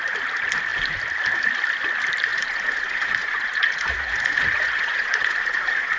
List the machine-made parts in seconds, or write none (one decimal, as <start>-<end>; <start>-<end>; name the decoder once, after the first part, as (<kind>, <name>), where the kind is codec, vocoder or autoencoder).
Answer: 2.3-6.0 (vocoder, Vocos)

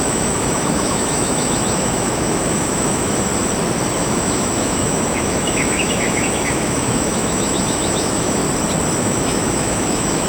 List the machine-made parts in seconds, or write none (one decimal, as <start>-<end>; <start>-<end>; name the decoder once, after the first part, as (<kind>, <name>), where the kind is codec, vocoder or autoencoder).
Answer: 0.0-3.3 (autoencoder, DAC-VAE); 4.0-8.4; 9.0-10.3

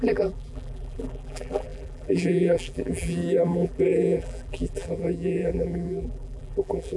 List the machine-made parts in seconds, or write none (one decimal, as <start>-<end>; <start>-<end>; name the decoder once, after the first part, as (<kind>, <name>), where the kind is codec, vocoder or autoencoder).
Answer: 0.0-7.0 (vocoder, BigVGAN v2)